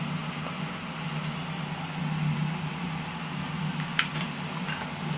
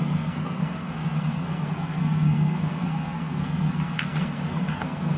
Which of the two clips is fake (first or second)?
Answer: second